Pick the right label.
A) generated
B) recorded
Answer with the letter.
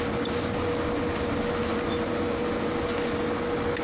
B